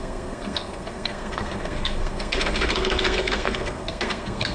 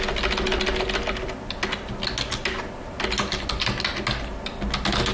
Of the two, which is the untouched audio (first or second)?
second